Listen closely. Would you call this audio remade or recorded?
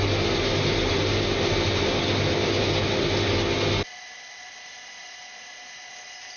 recorded